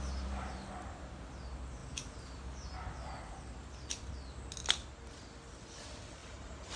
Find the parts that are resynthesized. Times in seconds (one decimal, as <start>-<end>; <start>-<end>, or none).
6.2-6.8